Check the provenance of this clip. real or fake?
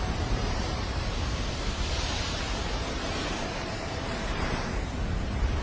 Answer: fake